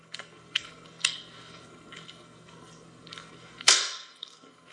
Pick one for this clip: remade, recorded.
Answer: remade